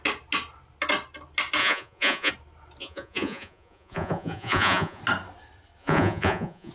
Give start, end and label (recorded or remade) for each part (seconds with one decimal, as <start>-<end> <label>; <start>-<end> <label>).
0.0-1.6 recorded; 1.6-2.3 remade; 2.3-2.8 recorded; 2.8-5.0 remade; 5.0-5.8 recorded; 5.8-6.7 remade